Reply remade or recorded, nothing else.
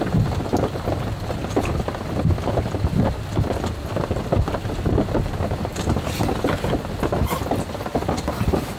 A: recorded